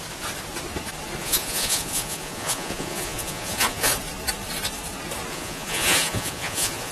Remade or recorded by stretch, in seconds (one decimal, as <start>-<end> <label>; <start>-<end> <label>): 0.0-1.2 recorded; 1.2-3.9 remade; 3.9-5.3 recorded; 5.3-6.9 remade